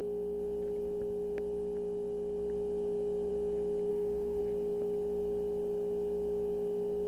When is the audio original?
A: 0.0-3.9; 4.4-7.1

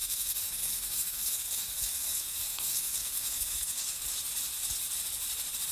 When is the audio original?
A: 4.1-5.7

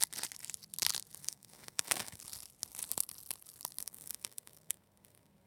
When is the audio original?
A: 0.0-1.2; 2.2-3.8

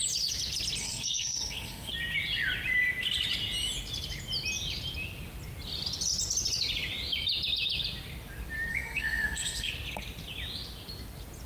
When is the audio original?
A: 0.0-0.8; 1.9-8.7; 9.7-11.5

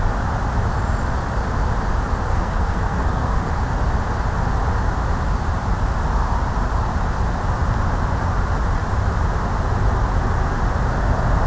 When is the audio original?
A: 0.0-2.3; 3.5-11.5